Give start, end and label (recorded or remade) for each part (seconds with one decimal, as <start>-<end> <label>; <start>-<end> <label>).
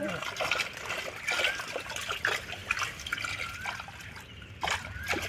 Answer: 0.0-5.3 recorded